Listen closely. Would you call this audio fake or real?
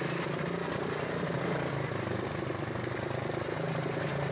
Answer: real